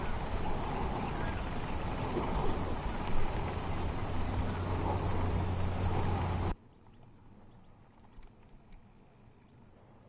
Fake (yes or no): no